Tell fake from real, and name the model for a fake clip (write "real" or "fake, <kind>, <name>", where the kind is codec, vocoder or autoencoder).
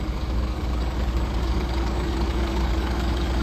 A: fake, codec, DAC